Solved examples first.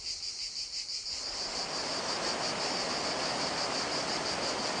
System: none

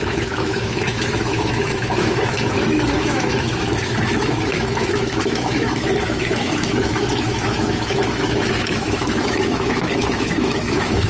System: autoencoder, DAC-VAE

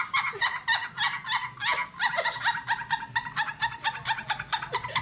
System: none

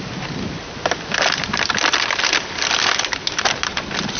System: none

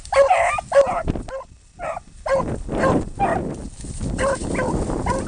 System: none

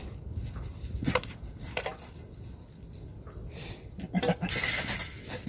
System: none